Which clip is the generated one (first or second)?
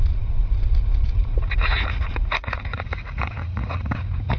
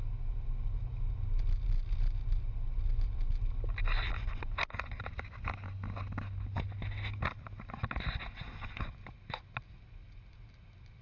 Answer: first